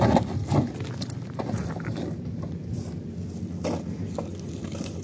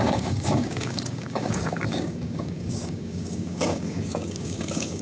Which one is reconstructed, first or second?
second